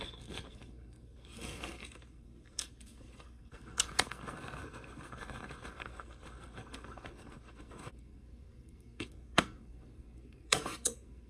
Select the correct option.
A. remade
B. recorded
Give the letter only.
A